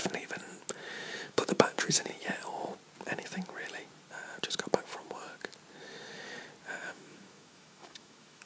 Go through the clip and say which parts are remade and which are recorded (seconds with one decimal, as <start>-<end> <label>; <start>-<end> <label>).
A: 0.0-0.9 recorded; 0.9-2.1 remade; 2.1-6.8 recorded; 6.8-8.5 remade